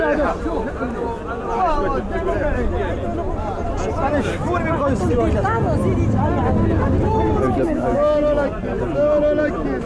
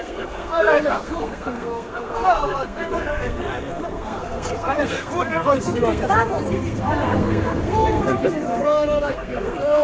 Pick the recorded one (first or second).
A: first